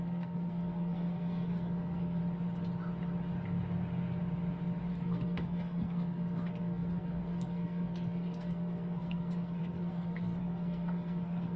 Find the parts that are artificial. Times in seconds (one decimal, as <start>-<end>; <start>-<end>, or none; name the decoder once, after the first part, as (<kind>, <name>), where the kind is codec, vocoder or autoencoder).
0.0-2.2 (codec, SNAC); 4.9-11.6